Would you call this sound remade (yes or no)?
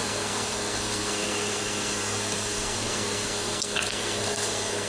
yes